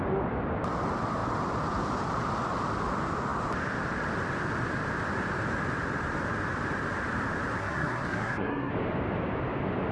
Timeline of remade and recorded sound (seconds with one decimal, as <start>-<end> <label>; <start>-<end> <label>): 0.0-7.6 recorded; 7.6-8.7 remade; 8.7-9.9 recorded